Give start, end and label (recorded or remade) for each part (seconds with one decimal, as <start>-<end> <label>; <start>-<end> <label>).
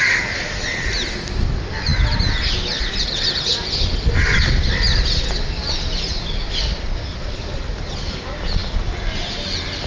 0.0-7.0 recorded; 7.0-8.1 remade; 8.1-9.9 recorded